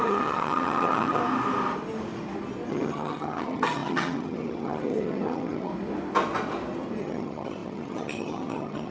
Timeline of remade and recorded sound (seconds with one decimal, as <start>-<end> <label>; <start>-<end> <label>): 0.0-1.2 remade; 1.2-2.7 recorded; 2.7-5.7 remade; 5.7-7.0 recorded; 7.0-8.9 remade